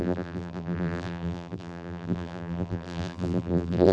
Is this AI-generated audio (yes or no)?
yes